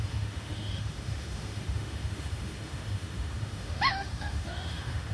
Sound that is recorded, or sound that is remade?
remade